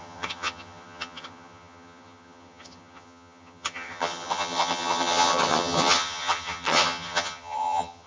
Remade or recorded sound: remade